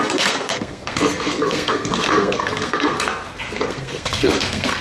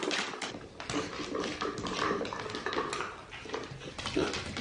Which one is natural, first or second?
second